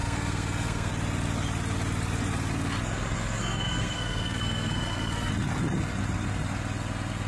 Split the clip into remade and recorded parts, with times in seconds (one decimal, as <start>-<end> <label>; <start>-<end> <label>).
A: 0.0-0.9 remade; 0.9-3.4 recorded; 3.4-5.3 remade; 5.3-7.3 recorded